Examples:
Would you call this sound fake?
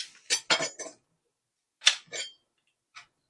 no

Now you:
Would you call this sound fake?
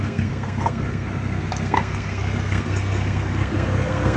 yes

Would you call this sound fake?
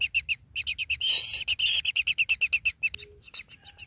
no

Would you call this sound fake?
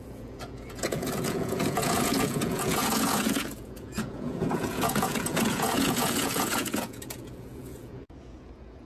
yes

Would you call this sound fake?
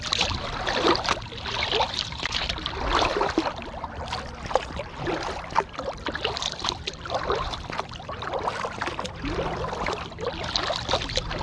yes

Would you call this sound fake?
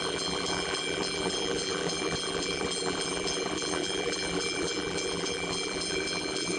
yes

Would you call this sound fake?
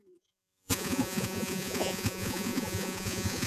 yes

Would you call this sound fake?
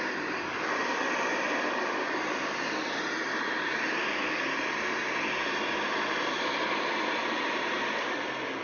no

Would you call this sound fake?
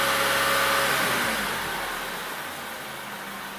no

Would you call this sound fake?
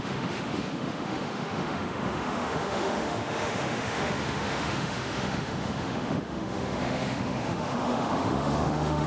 yes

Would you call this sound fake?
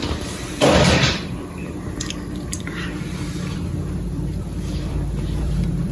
yes